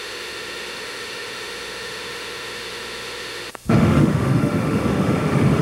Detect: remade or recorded remade